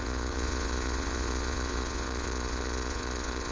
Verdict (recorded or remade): remade